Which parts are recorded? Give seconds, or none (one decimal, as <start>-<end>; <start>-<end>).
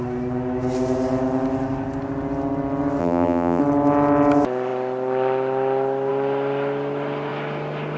0.0-3.0; 3.6-8.0